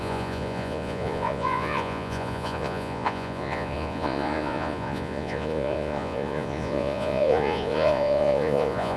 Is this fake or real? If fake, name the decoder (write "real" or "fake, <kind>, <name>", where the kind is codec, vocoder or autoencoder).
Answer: fake, vocoder, Vocos